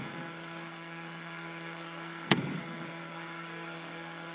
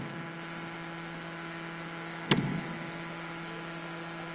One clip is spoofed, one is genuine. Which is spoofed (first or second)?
first